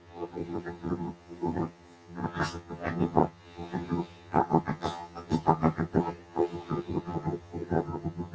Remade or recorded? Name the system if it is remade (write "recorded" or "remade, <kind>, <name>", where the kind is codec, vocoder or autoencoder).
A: remade, vocoder, HiFi-GAN